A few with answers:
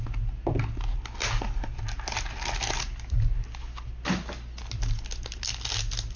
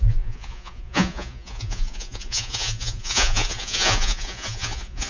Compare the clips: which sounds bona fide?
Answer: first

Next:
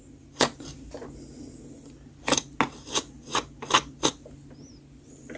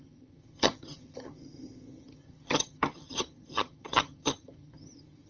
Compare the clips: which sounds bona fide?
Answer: first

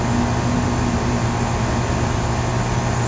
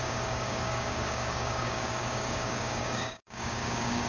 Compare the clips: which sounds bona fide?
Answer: first